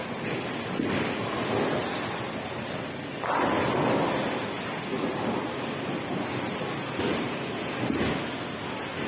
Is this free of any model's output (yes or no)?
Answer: yes